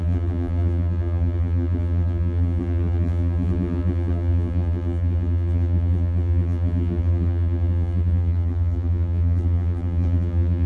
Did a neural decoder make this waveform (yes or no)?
yes